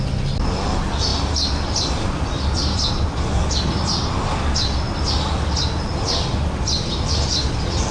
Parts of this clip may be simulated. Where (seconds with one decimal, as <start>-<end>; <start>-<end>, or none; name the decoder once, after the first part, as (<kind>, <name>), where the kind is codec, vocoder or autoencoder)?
none